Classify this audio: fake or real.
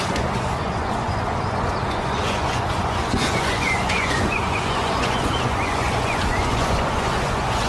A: fake